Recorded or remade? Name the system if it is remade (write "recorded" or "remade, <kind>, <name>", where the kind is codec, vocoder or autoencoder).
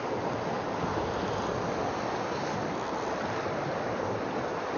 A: recorded